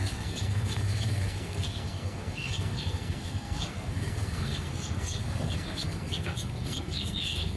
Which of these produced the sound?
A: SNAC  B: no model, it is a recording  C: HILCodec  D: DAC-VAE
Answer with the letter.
A